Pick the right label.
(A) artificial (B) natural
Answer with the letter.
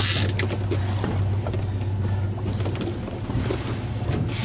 B